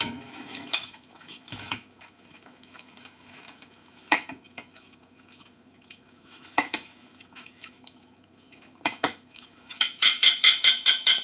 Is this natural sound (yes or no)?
no